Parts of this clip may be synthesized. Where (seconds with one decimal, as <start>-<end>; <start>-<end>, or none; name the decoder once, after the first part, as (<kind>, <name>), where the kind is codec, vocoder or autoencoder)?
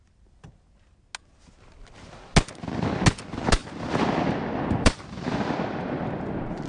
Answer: 3.6-6.7 (vocoder, BigVGAN v2)